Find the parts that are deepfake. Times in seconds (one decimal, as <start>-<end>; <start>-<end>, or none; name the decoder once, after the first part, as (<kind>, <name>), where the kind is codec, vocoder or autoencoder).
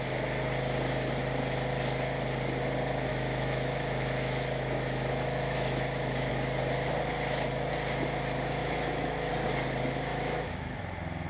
3.1-6.3 (autoencoder, DAC-VAE); 8.6-9.3; 10.1-10.8